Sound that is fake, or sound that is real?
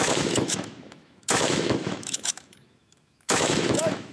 fake